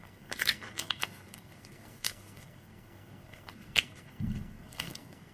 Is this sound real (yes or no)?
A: no